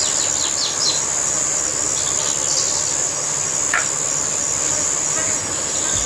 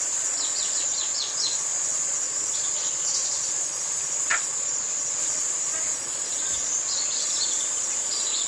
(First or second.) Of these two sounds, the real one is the first